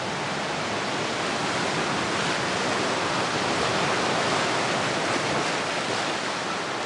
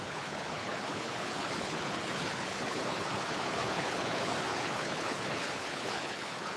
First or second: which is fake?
second